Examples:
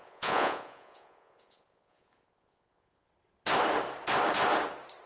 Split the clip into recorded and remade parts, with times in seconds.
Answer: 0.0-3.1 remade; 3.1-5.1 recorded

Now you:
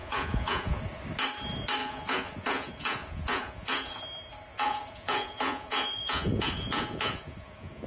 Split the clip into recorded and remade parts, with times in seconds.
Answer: 0.0-0.8 remade; 0.8-1.8 recorded; 1.8-4.0 remade; 4.0-4.5 recorded; 4.5-7.9 remade

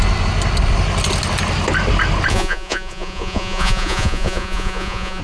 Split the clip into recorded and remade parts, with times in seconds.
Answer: 0.0-2.3 recorded; 2.3-5.2 remade

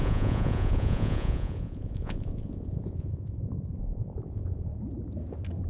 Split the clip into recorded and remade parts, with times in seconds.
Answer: 0.0-4.7 remade; 4.7-5.7 recorded

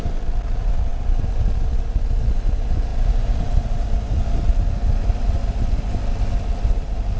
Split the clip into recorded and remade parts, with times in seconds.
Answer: 0.0-7.2 recorded

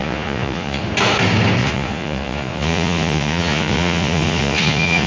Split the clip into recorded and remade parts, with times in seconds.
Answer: 0.0-0.8 remade; 0.8-1.6 recorded; 1.6-5.1 remade

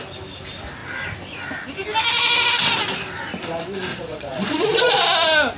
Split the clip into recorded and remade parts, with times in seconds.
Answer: 0.0-3.9 recorded; 3.9-5.0 remade; 5.0-5.6 recorded